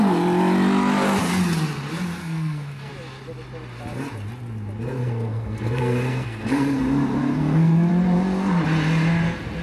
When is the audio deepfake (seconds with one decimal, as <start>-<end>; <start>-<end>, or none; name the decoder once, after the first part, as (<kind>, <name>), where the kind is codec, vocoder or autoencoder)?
2.2-2.9 (codec, SNAC); 5.0-6.8; 7.2-7.9